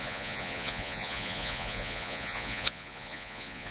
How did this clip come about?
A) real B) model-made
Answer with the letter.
B